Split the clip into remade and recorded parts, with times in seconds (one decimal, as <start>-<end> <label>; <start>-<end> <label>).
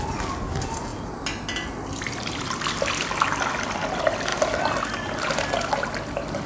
0.0-6.5 recorded